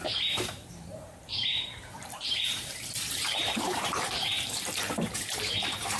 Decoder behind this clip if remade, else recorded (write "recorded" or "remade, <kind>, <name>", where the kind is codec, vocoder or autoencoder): remade, vocoder, BigVGAN v2